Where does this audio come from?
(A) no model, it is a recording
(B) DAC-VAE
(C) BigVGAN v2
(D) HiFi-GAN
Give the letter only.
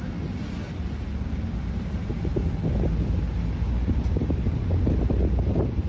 A